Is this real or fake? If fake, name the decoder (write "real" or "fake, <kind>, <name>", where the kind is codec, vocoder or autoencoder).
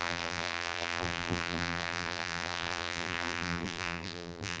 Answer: fake, vocoder, BigVGAN v2